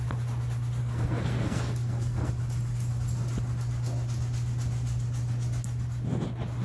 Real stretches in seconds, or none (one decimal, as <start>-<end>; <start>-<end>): 0.0-0.8; 2.3-6.6